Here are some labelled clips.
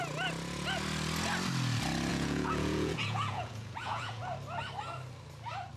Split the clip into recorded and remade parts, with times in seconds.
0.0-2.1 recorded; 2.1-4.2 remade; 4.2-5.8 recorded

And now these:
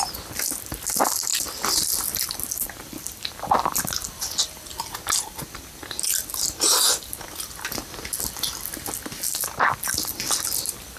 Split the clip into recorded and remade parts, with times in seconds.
0.0-1.3 recorded; 1.3-2.3 remade; 2.3-11.0 recorded

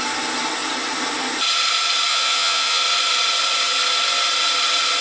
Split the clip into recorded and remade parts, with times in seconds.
0.0-2.1 recorded; 2.1-2.8 remade; 2.8-5.0 recorded

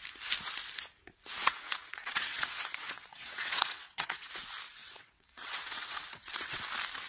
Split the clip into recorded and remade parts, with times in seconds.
0.0-1.4 recorded; 1.4-4.3 remade; 4.3-4.8 recorded; 4.8-6.6 remade; 6.6-7.1 recorded

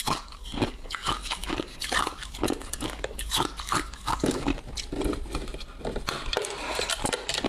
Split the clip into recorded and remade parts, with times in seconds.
0.0-4.5 remade; 4.5-7.5 recorded

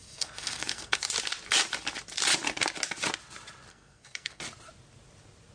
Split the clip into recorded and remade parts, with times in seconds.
0.0-1.1 remade; 1.1-3.7 recorded; 3.7-4.4 remade; 4.4-5.5 recorded

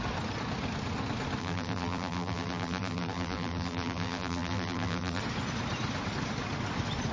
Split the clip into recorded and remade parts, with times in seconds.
0.0-1.4 recorded; 1.4-5.2 remade; 5.2-7.1 recorded

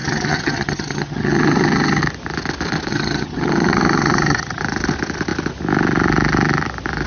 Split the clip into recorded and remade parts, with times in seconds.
0.0-2.0 remade; 2.0-2.9 recorded; 2.9-4.6 remade; 4.6-7.1 recorded